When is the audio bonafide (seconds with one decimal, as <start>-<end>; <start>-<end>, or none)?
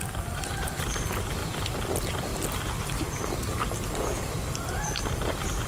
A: 1.4-1.9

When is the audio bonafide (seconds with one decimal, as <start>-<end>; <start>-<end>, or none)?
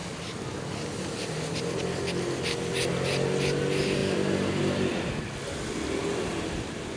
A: 0.6-4.0; 5.2-7.0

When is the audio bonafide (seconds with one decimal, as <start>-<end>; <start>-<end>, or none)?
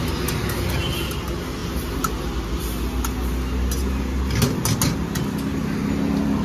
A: 0.0-6.4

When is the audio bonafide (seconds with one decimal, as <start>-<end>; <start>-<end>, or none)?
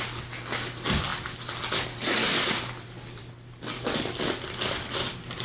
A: 0.0-5.4